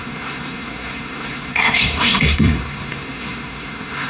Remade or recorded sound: remade